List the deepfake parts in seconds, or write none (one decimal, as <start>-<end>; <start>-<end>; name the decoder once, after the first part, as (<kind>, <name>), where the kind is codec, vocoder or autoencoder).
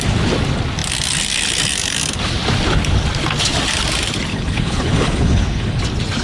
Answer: 4.3-5.8 (codec, HILCodec)